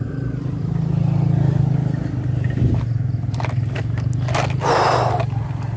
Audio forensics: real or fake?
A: real